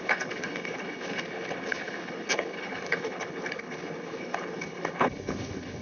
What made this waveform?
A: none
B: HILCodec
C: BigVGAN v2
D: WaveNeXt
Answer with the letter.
B